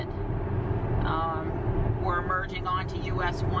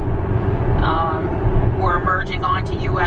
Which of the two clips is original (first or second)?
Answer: first